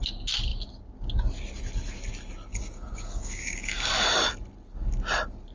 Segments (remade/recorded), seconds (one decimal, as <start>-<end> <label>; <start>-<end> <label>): 0.0-2.5 recorded; 2.5-3.9 remade; 3.9-5.5 recorded